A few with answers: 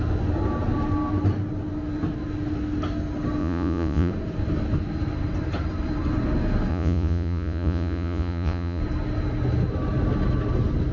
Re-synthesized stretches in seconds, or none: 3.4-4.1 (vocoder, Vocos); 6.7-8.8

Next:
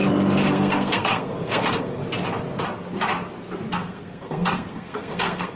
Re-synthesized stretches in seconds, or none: 0.5-2.0 (codec, SNAC); 3.7-5.6

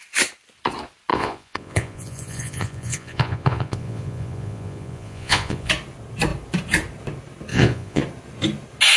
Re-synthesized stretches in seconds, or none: 1.1-5.7 (vocoder, Vocos); 7.5-8.0

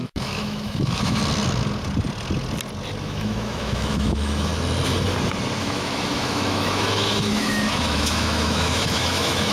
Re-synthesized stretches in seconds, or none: 0.0-1.2 (autoencoder, DAC-VAE); 3.0-4.5; 5.6-9.5

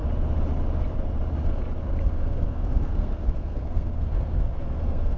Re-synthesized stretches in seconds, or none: 2.1-5.2 (codec, SNAC)